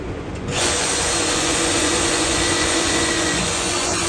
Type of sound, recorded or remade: remade